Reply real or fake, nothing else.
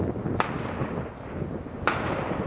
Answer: real